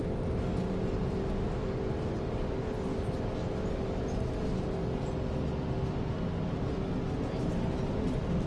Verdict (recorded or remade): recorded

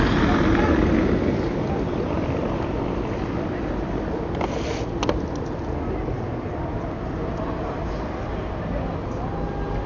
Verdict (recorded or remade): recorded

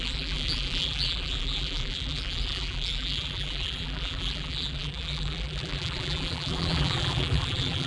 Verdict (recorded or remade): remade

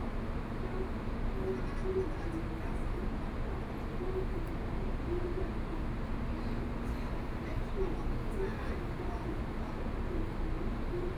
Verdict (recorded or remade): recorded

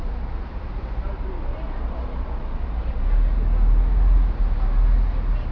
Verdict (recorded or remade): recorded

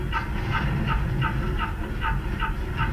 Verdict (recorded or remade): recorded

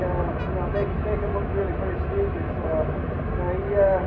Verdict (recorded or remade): recorded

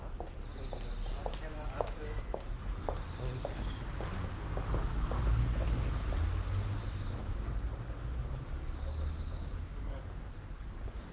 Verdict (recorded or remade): recorded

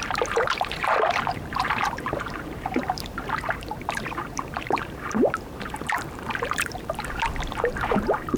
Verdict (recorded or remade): remade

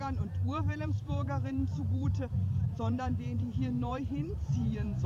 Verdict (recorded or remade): remade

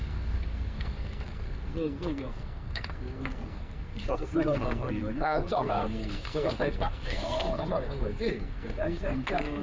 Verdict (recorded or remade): remade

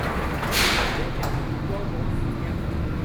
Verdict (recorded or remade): recorded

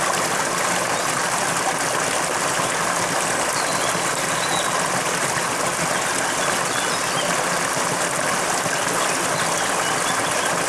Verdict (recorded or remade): recorded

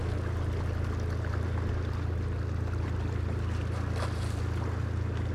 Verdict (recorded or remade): recorded